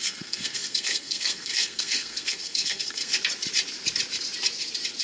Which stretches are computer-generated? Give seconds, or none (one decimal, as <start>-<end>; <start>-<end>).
0.0-3.1